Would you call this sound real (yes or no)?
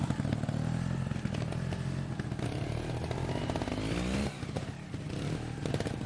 yes